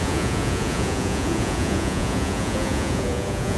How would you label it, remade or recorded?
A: remade